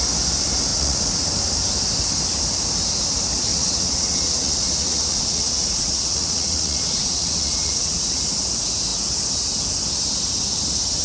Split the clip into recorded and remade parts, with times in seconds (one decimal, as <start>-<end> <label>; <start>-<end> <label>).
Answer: 0.0-0.7 recorded; 0.7-1.3 remade; 1.3-3.5 recorded; 3.5-8.2 remade; 8.2-11.0 recorded